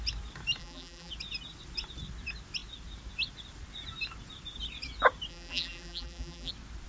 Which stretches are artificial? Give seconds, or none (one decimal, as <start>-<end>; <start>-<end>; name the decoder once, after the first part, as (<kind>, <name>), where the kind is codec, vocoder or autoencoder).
0.6-1.1 (vocoder, BigVGAN v2); 5.3-6.5